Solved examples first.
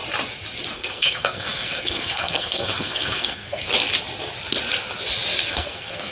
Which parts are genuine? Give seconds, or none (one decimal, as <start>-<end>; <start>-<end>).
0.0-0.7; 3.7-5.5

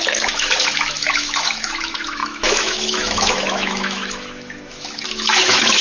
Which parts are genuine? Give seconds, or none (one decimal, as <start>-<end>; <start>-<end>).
none

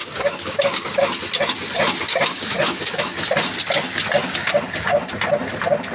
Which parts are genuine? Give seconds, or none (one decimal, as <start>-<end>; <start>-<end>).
1.0-2.1; 3.0-4.2; 5.1-5.9

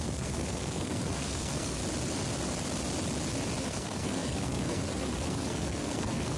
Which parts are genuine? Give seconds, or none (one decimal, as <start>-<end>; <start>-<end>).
1.8-3.6